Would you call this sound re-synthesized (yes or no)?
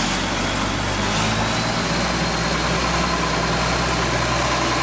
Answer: no